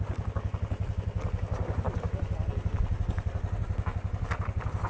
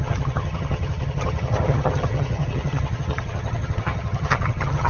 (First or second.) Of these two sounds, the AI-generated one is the second